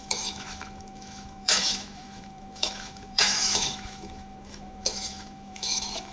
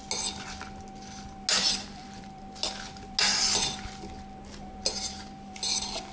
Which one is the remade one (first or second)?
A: first